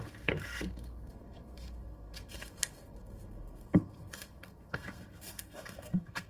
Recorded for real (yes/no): no